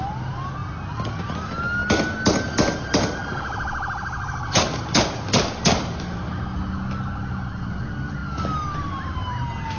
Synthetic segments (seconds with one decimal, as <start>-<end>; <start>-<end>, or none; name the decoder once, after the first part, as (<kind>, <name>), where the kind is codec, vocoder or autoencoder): none